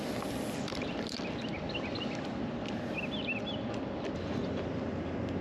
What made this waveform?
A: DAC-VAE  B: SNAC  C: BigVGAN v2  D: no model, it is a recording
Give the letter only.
D